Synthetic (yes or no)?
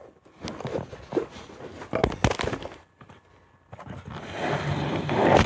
no